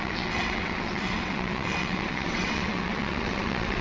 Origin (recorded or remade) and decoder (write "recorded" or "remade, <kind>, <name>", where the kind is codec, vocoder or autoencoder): remade, vocoder, WaveNeXt